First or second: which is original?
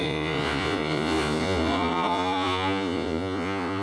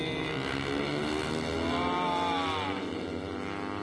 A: second